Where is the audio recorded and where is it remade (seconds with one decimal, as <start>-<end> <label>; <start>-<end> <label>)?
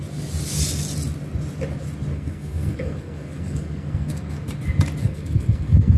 0.0-2.1 recorded; 2.1-4.5 remade; 4.5-5.0 recorded; 5.0-6.0 remade